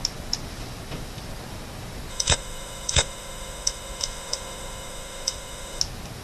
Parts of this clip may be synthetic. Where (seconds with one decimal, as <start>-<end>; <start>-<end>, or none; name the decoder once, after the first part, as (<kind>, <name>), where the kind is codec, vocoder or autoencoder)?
2.1-5.8 (autoencoder, DAC-VAE)